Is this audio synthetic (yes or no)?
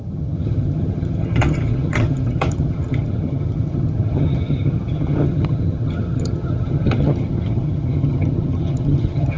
yes